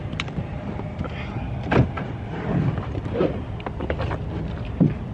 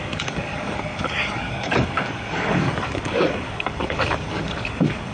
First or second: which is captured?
first